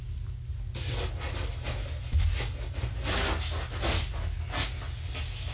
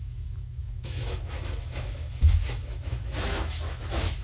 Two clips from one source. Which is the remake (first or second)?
second